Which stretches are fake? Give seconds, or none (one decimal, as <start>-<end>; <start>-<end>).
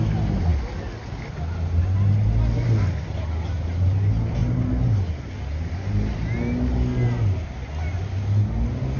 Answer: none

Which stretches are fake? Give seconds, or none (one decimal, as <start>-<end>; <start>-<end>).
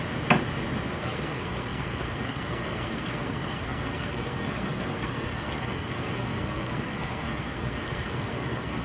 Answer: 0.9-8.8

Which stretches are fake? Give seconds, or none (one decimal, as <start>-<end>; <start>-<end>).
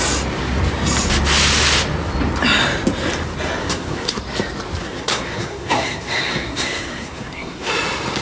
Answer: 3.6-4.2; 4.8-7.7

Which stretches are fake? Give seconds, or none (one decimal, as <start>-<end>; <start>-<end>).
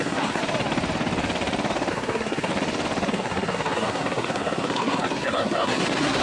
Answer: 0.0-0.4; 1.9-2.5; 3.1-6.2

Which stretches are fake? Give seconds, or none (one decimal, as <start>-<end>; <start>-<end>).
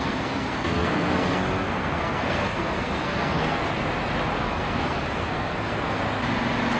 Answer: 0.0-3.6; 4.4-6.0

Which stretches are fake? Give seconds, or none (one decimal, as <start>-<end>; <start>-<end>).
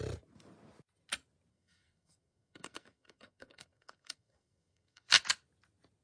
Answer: 1.5-5.1